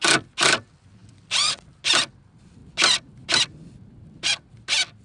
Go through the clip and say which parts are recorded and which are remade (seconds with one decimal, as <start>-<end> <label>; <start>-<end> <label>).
0.0-5.0 recorded